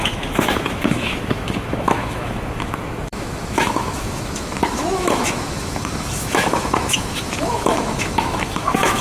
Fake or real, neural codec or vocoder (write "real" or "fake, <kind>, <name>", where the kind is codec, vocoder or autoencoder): fake, autoencoder, DAC-VAE